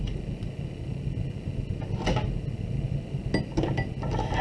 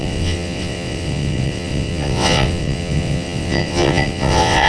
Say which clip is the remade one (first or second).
second